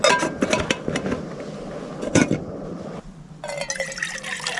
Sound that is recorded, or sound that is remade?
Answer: recorded